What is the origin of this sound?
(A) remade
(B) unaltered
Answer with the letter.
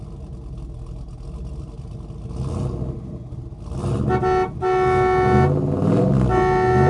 B